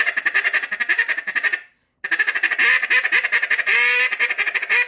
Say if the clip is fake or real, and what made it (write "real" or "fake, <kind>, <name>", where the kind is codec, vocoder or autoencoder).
real